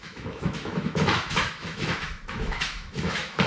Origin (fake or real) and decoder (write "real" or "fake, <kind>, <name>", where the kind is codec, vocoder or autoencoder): fake, autoencoder, DAC-VAE